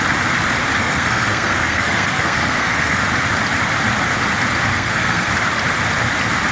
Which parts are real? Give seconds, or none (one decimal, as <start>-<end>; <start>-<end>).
0.0-0.8; 3.0-4.7; 5.3-6.5